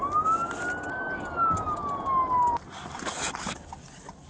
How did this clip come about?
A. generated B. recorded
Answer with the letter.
B